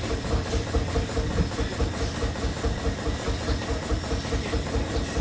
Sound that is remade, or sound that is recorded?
recorded